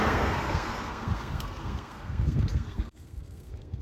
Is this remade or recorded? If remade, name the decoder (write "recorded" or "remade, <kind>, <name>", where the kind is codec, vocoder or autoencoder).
remade, codec, SNAC